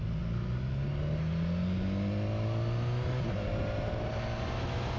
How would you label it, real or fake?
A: real